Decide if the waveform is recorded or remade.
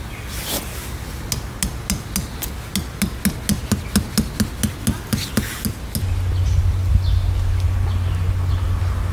recorded